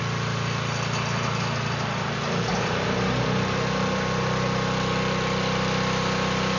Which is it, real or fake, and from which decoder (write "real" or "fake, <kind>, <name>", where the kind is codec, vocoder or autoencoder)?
real